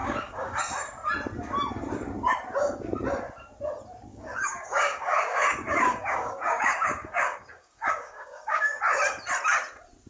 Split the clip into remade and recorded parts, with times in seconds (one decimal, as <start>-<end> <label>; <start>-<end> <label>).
0.0-0.6 remade; 0.6-4.1 recorded; 4.1-8.8 remade; 8.8-10.1 recorded